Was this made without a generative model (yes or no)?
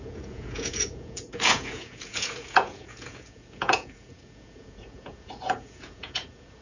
no